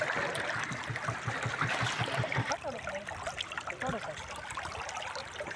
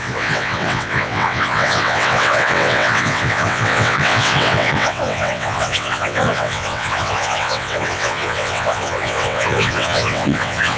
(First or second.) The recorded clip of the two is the first